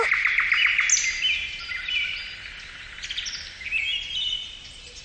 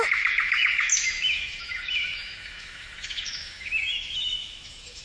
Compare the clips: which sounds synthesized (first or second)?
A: second